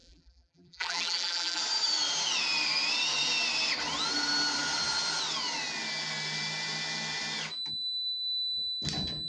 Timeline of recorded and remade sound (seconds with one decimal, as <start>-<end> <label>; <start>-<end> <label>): 0.0-1.6 remade; 1.6-9.3 recorded